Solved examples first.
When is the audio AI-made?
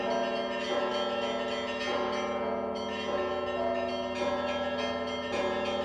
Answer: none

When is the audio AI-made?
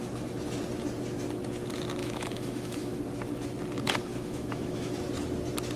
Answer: 2.0-3.0 (autoencoder, DAC-VAE); 4.1-4.9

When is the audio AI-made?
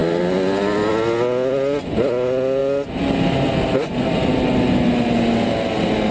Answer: none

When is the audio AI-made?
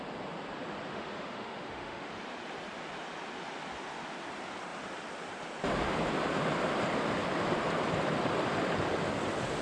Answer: 0.9-2.1 (autoencoder, DAC-VAE)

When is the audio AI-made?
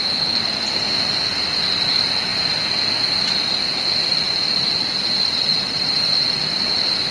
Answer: 0.8-1.3 (autoencoder, DAC-VAE)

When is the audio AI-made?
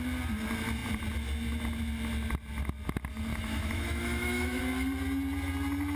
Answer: 3.3-4.6 (autoencoder, DAC-VAE)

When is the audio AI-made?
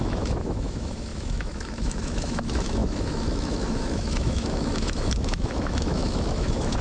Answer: 0.0-6.8 (autoencoder, DAC-VAE)